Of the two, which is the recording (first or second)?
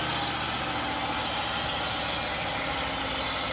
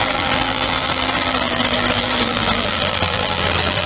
first